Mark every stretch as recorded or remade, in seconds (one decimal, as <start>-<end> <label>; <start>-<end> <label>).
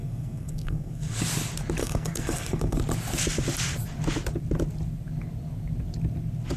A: 0.0-1.2 remade; 1.2-1.8 recorded; 1.8-2.8 remade; 2.8-6.6 recorded